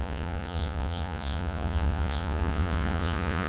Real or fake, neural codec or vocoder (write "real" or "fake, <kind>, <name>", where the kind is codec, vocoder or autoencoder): fake, vocoder, Vocos